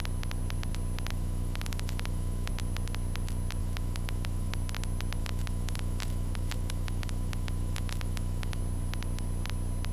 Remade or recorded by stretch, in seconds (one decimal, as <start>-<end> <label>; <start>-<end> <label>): 0.0-1.1 recorded; 1.1-2.5 remade; 2.5-3.6 recorded; 3.6-4.5 remade; 4.5-5.2 recorded; 5.2-8.6 remade; 8.6-9.9 recorded